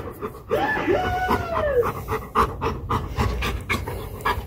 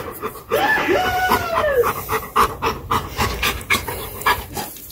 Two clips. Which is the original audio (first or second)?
first